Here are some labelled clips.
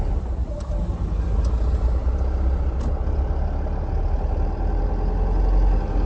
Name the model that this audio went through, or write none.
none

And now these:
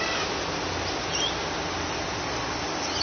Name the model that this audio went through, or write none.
none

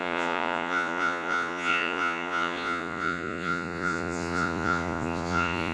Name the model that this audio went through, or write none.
vocoder, Vocos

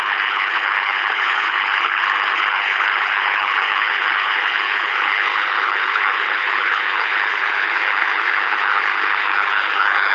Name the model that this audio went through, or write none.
codec, HILCodec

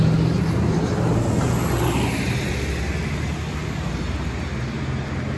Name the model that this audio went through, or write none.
none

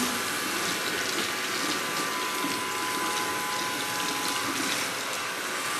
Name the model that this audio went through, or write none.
none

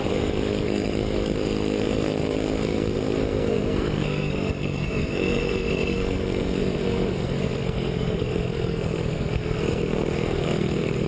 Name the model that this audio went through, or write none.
codec, SNAC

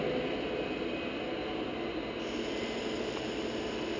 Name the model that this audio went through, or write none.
none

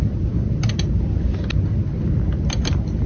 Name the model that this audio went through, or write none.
none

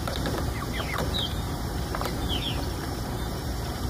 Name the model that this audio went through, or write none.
vocoder, BigVGAN v2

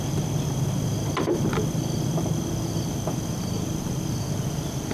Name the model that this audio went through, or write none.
none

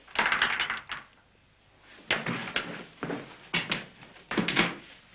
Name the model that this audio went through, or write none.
none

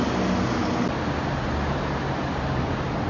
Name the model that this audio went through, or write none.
none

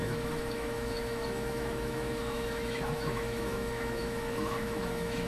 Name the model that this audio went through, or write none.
autoencoder, DAC-VAE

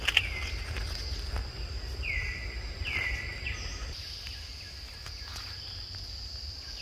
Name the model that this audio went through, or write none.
none